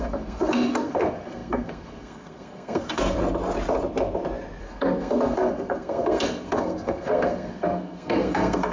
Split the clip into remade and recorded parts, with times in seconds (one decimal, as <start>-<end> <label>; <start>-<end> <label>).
0.0-3.2 remade; 3.2-4.6 recorded; 4.6-8.7 remade